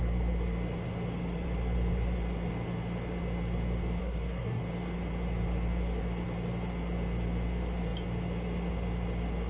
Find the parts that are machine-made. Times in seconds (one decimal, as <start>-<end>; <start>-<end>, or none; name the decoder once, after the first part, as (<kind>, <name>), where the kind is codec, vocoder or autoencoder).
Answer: 4.0-4.6 (codec, SNAC)